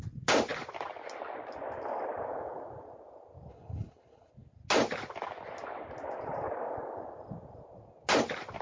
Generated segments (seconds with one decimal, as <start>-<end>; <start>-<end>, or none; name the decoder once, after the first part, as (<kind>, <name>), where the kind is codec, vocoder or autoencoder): 3.5-4.3 (codec, HILCodec)